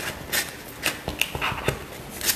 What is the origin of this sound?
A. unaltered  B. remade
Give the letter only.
A